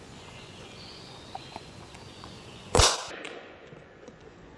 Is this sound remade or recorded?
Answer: remade